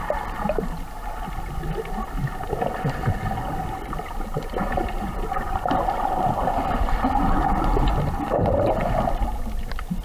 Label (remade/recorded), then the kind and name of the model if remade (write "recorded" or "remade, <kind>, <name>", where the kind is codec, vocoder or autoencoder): recorded